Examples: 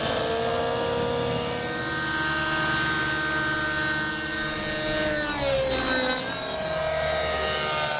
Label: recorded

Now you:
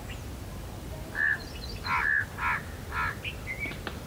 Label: recorded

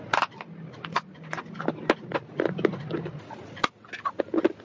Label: recorded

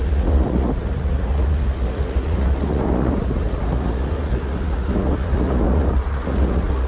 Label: remade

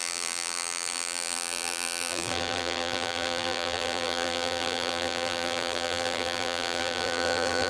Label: remade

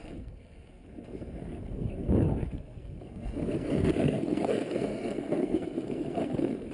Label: remade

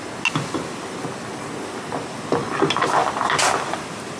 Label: recorded